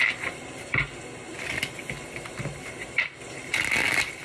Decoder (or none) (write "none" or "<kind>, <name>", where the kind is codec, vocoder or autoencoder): none